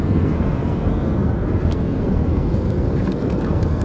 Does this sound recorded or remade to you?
remade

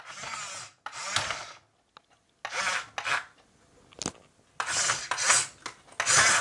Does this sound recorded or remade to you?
recorded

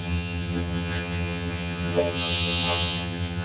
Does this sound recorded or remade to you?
remade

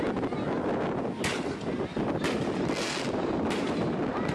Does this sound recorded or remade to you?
recorded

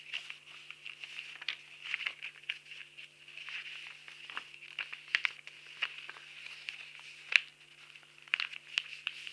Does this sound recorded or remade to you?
recorded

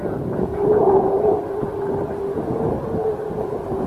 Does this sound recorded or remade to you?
recorded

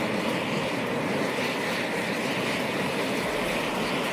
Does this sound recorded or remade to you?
recorded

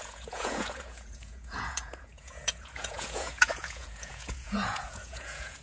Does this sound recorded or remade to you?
remade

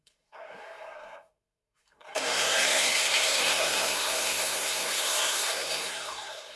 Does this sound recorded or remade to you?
remade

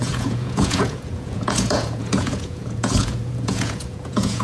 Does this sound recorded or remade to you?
remade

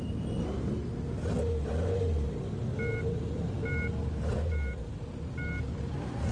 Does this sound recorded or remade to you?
recorded